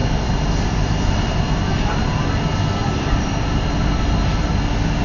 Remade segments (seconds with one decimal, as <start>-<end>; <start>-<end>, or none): 0.0-2.4; 2.8-4.5